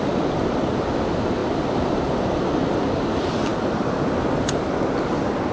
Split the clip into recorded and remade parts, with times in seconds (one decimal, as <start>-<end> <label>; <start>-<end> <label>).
0.0-5.5 recorded